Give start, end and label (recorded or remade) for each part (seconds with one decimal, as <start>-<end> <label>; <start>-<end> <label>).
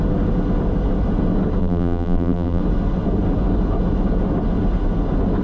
0.0-1.6 recorded; 1.6-2.6 remade; 2.6-5.4 recorded